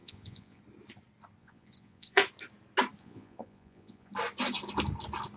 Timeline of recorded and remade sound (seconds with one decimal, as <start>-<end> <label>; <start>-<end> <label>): 0.0-0.6 remade; 0.6-1.4 recorded; 1.4-2.2 remade; 2.2-3.0 recorded; 3.0-4.1 remade; 4.1-5.4 recorded